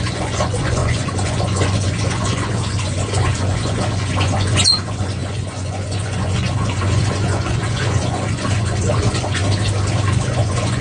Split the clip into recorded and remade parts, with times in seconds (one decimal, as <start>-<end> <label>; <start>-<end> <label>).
0.0-9.4 remade; 9.4-10.1 recorded; 10.1-10.8 remade